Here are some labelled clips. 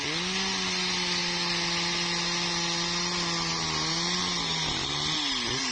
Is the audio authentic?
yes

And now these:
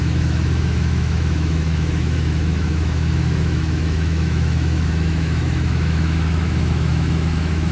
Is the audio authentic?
no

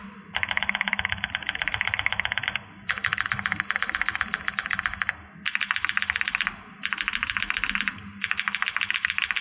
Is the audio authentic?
yes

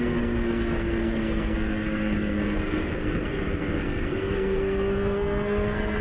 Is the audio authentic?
no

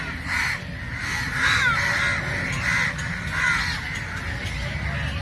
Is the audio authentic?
yes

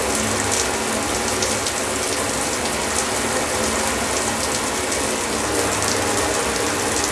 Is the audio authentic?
yes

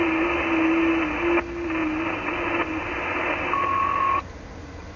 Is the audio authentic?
yes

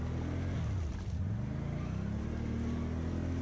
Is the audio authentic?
yes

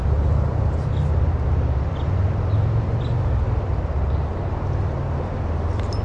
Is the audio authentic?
yes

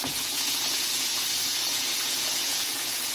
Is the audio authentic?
no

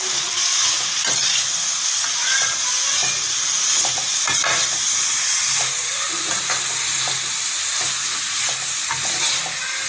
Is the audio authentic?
yes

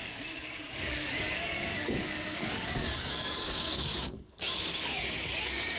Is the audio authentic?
no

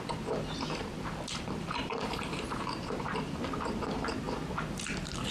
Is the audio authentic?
no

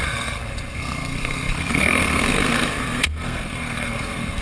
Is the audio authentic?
no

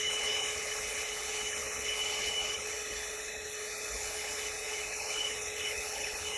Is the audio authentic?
no